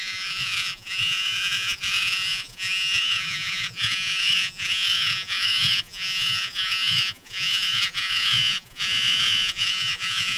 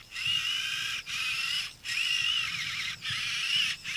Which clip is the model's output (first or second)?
first